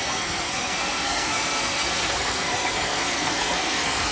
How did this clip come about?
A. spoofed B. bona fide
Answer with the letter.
A